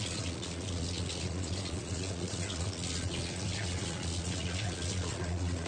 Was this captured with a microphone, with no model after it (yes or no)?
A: no